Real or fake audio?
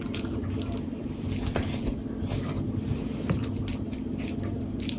fake